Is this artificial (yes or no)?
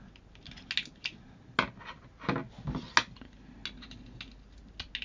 no